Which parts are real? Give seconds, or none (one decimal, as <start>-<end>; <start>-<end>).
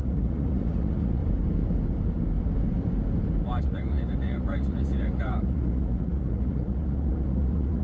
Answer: 1.2-3.6